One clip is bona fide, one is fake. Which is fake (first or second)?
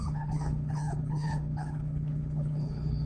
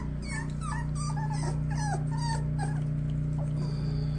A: first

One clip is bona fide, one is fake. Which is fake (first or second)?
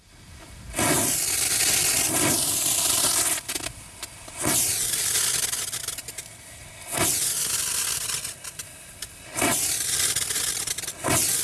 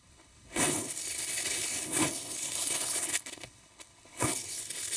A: second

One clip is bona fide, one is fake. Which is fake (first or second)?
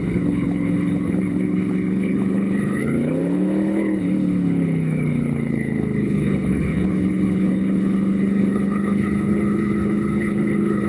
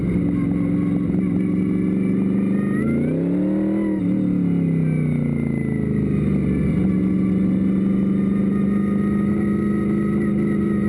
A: first